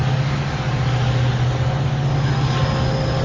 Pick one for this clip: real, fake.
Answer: real